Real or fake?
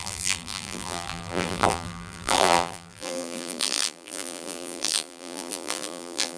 fake